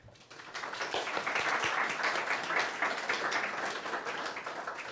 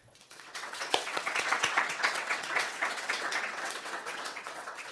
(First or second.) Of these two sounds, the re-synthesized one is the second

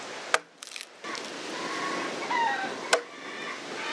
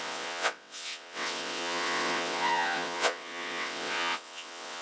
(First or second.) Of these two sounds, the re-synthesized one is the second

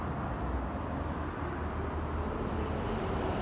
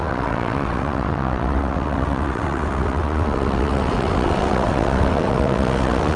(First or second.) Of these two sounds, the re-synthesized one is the second